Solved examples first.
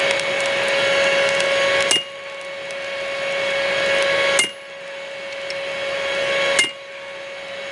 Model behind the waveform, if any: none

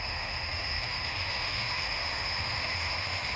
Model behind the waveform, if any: autoencoder, DAC-VAE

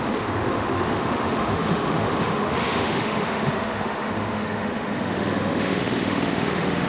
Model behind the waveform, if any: autoencoder, DAC-VAE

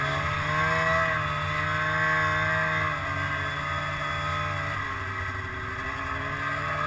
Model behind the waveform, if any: none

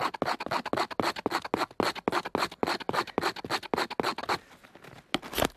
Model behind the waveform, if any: none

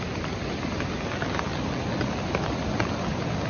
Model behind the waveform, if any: none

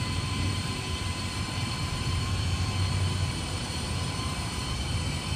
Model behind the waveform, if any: vocoder, BigVGAN v2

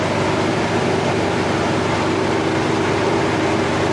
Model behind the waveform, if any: vocoder, BigVGAN v2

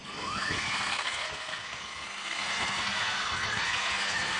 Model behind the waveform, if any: codec, SNAC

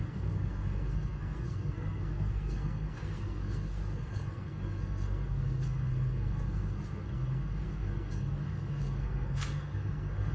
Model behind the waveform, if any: codec, SNAC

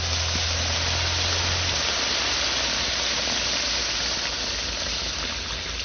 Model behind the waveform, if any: none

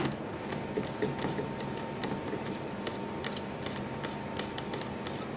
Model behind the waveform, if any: none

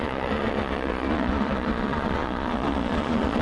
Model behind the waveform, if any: vocoder, Vocos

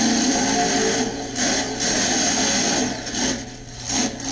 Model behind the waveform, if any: none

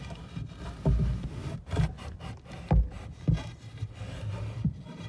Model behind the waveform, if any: none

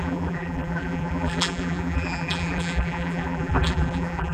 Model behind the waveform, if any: vocoder, BigVGAN v2